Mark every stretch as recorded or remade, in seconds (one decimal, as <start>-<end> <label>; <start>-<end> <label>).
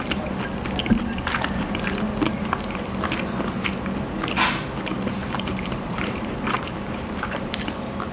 0.0-5.2 recorded; 5.2-7.6 remade; 7.6-8.1 recorded